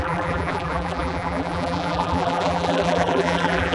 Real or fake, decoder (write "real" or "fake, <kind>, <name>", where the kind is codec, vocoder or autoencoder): fake, vocoder, BigVGAN v2